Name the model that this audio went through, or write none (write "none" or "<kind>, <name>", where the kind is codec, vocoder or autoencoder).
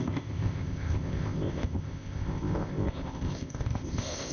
codec, ZipCodec